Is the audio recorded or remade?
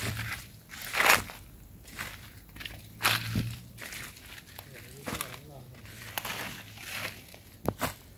recorded